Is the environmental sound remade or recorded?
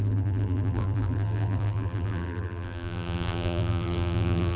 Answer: remade